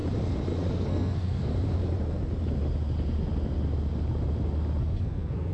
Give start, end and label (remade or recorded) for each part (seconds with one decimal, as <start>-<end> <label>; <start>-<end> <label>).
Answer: 0.0-0.7 recorded; 0.7-1.5 remade; 1.5-4.8 recorded; 4.8-5.5 remade